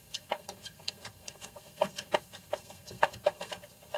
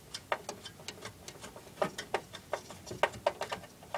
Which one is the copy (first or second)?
first